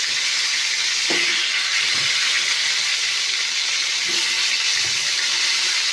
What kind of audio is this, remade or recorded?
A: recorded